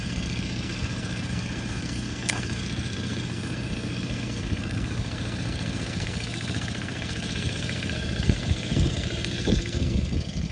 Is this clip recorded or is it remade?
remade